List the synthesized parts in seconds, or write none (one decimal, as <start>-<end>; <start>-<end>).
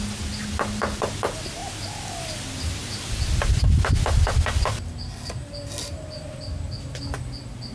none